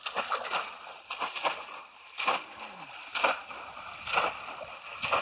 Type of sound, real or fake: real